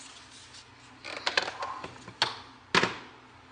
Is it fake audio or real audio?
real